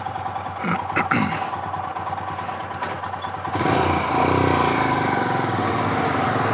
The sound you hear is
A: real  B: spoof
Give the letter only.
A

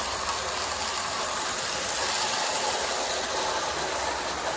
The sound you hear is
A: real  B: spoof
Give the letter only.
A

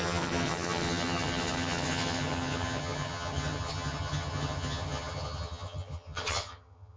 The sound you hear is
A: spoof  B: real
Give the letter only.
A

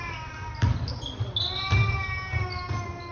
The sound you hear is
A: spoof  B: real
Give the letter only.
B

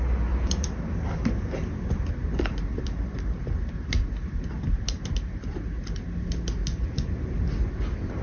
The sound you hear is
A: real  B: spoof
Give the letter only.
A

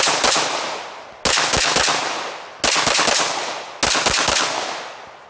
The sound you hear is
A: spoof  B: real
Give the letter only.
B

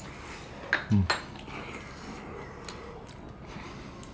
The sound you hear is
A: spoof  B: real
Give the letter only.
B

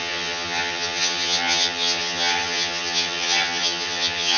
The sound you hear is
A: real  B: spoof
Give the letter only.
B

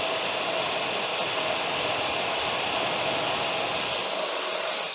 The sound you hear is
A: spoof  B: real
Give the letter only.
B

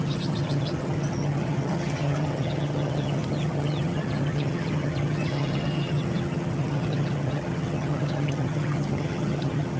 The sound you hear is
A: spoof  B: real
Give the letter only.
A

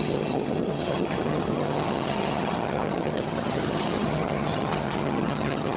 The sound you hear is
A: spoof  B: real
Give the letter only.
A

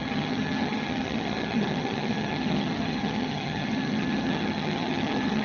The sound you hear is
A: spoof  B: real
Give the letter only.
A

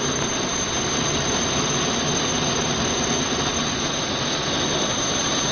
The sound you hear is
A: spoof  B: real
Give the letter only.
B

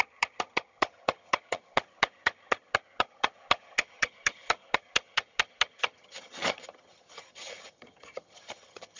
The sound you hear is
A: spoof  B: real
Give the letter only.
A